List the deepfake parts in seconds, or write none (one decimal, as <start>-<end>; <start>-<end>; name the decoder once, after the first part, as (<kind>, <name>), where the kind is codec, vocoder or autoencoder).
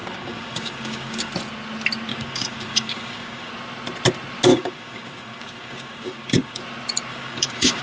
0.0-1.3 (codec, DAC); 2.1-3.5; 4.5-6.6; 7.1-7.8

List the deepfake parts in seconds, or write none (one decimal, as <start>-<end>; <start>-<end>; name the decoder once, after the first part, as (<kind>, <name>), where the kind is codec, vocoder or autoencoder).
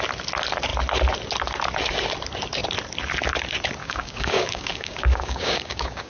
3.8-6.1 (codec, DAC)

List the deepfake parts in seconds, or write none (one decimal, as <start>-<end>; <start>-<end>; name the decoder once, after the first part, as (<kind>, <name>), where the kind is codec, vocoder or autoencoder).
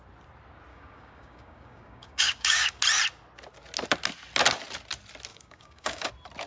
0.7-2.8 (codec, DAC); 5.3-6.1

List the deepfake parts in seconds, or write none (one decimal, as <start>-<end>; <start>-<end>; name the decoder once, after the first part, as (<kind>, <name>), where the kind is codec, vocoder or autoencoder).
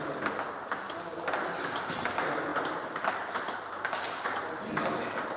none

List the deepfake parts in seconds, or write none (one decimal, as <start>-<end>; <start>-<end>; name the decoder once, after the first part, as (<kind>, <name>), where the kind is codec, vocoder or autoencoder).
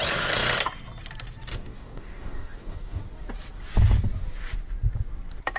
1.5-3.0 (codec, DAC)